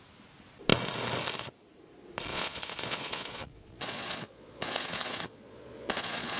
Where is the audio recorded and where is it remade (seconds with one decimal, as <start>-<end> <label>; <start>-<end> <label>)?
0.0-2.3 recorded; 2.3-6.4 remade